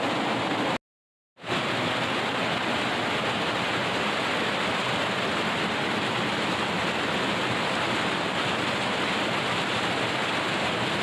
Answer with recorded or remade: recorded